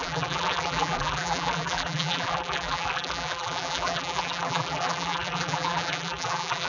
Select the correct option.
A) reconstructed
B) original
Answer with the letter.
A